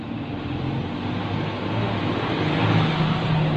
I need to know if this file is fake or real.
real